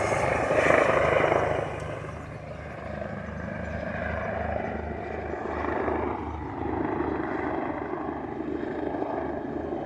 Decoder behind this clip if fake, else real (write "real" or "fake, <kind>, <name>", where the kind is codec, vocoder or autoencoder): real